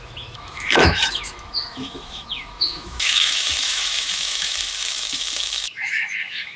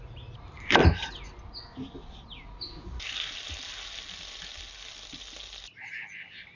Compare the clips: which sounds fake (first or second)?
first